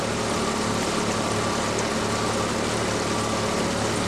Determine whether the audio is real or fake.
real